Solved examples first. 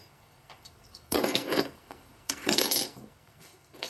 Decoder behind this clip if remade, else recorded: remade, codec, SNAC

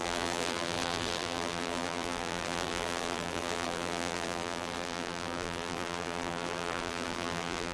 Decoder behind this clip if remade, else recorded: remade, vocoder, BigVGAN v2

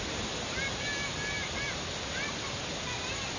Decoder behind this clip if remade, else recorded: recorded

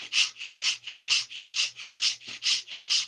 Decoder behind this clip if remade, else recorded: recorded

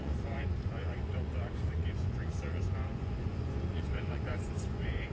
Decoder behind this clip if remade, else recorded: remade, vocoder, Vocos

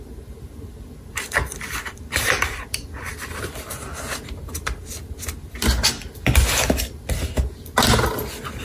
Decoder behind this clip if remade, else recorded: recorded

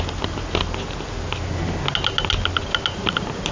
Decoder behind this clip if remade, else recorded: recorded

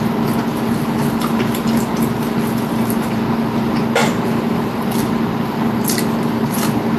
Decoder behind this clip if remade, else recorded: recorded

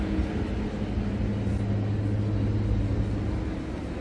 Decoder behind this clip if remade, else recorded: recorded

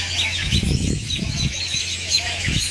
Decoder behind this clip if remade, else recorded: remade, autoencoder, DAC-VAE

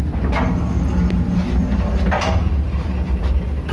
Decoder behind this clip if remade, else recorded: recorded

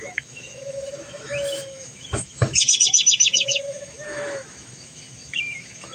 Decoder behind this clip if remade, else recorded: remade, autoencoder, DAC-VAE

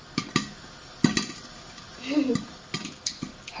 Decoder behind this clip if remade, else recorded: recorded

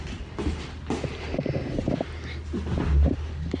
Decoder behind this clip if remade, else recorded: recorded